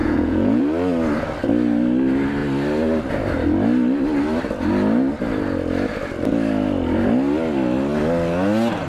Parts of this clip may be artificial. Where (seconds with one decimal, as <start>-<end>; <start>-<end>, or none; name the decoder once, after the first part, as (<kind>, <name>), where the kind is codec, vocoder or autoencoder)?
0.0-0.6 (vocoder, Vocos)